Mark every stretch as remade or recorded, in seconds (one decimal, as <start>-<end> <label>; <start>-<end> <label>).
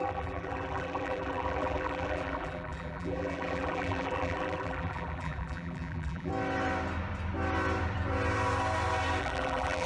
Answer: 0.0-6.3 remade; 6.3-9.2 recorded; 9.2-9.9 remade